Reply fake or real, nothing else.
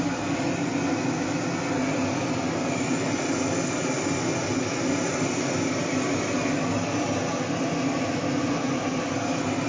real